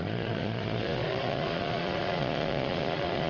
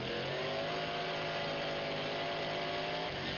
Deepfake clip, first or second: first